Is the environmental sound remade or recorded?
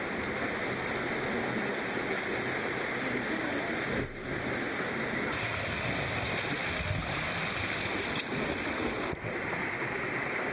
recorded